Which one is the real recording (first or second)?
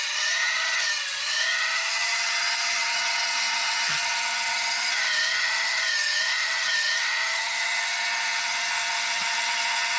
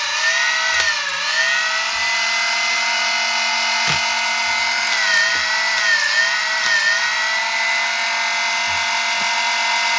second